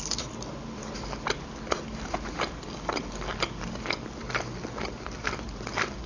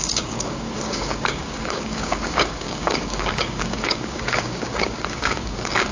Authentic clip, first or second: first